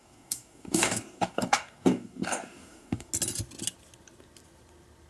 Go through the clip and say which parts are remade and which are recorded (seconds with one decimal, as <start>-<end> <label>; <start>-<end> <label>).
0.0-3.1 remade; 3.1-5.1 recorded